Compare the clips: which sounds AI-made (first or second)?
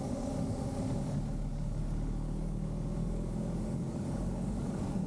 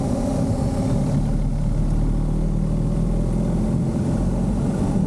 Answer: first